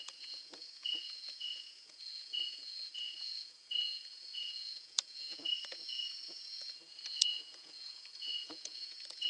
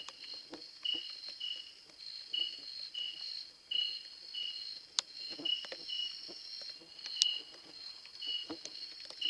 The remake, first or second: first